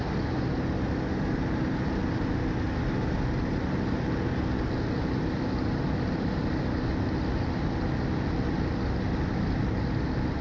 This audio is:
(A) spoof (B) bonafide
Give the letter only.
B